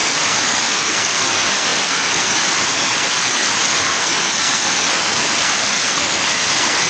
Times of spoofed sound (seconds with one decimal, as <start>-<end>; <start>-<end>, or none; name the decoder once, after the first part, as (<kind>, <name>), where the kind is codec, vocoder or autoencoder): 0.0-6.9 (codec, SNAC)